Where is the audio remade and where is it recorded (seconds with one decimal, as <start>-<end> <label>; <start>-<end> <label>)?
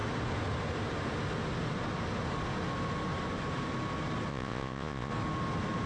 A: 0.0-4.3 recorded; 4.3-5.1 remade; 5.1-5.9 recorded